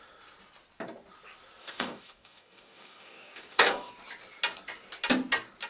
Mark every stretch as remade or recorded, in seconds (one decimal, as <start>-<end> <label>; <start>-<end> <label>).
0.0-1.6 recorded; 1.6-3.9 remade; 3.9-5.7 recorded